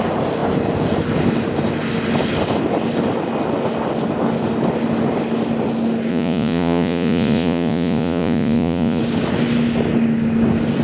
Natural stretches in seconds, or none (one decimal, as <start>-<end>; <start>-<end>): 0.0-6.1; 9.0-10.8